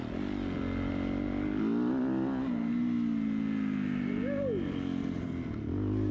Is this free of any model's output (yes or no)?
yes